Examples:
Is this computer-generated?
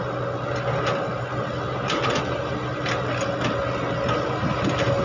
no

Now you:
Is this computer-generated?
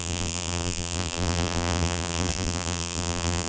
yes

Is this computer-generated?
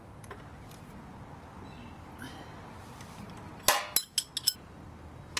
no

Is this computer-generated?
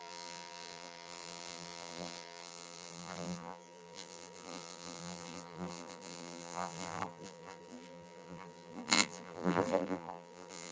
yes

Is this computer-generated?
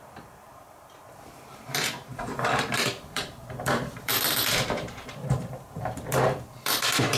yes